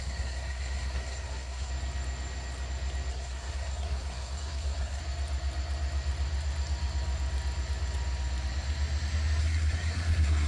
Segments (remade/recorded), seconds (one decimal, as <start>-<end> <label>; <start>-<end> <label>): 0.0-1.7 remade; 1.7-3.1 recorded; 3.1-5.0 remade; 5.0-9.4 recorded; 9.4-10.5 remade